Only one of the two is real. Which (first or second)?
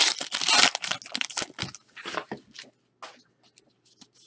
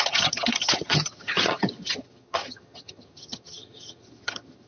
first